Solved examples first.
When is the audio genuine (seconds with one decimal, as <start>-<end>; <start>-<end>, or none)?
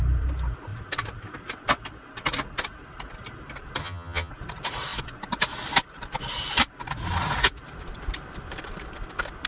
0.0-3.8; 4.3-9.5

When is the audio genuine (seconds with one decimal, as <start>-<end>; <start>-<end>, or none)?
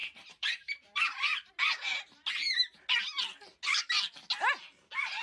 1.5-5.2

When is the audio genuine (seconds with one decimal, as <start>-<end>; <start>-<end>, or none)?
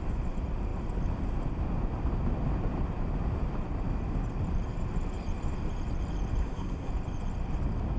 0.0-6.4; 6.9-8.0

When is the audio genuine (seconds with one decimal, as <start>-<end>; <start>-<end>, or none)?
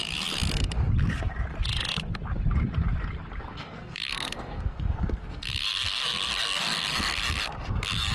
0.0-3.4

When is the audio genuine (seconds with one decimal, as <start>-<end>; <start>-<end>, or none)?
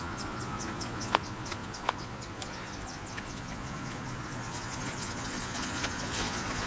none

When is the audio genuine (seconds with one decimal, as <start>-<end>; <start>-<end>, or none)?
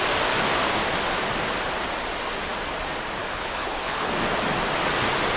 0.0-3.2; 4.1-5.4